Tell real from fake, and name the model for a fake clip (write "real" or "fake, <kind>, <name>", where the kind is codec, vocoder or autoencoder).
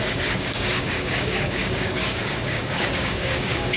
fake, codec, DAC